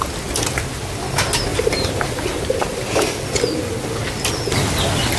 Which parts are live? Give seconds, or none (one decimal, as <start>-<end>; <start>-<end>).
0.0-1.5; 2.6-5.2